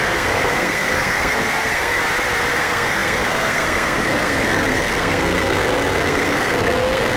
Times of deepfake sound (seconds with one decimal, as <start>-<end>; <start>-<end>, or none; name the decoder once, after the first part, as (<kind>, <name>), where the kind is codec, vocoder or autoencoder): 0.0-2.0 (codec, SNAC); 2.5-7.2